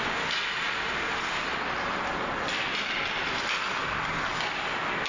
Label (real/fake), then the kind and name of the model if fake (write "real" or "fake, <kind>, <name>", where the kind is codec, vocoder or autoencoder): real